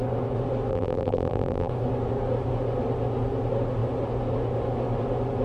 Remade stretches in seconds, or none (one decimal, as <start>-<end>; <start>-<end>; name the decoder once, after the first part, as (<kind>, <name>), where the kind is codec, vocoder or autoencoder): 0.7-1.7 (vocoder, BigVGAN v2)